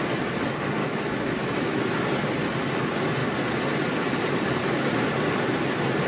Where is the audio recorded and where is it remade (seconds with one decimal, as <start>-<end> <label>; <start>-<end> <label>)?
0.0-0.8 recorded; 0.8-1.8 remade; 1.8-6.1 recorded